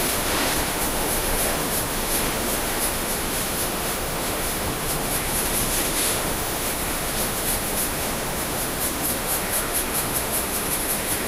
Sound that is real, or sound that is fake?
fake